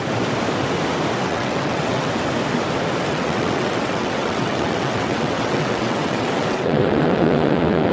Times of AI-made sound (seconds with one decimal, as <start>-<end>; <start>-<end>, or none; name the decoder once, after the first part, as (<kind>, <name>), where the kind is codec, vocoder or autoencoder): 1.2-2.1 (vocoder, WaveNeXt); 3.1-7.9